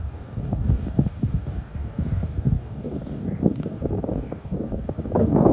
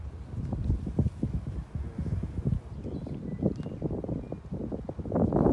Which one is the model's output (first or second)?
first